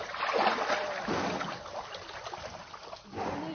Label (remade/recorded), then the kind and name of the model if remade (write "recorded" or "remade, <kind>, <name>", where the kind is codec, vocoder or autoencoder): recorded